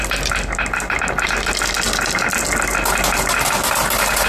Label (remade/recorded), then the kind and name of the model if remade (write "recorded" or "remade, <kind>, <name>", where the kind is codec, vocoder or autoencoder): recorded